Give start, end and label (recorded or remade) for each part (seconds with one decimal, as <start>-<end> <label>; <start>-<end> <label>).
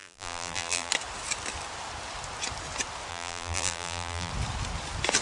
0.0-0.9 remade; 0.9-3.1 recorded; 3.1-4.3 remade; 4.3-5.2 recorded